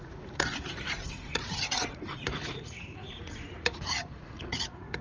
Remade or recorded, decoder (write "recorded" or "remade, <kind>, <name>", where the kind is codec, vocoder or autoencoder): remade, vocoder, Vocos